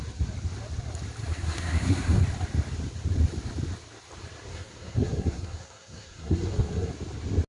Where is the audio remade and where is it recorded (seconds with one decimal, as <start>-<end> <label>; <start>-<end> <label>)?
0.0-1.3 recorded; 1.3-2.2 remade; 2.2-4.5 recorded; 4.5-6.9 remade; 6.9-7.5 recorded